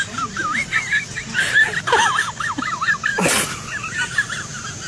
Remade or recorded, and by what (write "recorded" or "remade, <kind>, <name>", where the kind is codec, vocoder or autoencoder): recorded